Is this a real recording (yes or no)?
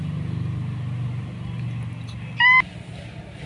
yes